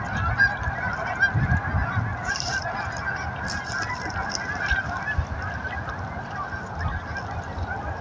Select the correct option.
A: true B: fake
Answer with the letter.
A